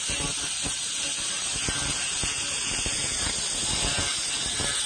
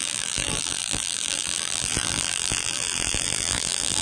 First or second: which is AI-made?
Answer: second